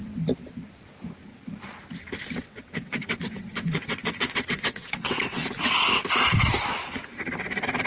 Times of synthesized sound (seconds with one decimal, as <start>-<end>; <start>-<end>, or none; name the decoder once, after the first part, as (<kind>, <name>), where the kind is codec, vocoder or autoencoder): 2.4-5.4 (vocoder, WaveNeXt)